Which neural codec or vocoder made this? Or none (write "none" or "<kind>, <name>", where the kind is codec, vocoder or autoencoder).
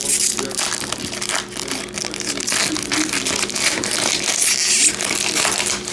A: none